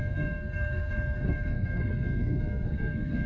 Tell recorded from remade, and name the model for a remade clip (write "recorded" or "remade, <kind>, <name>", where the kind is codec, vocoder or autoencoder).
remade, codec, SNAC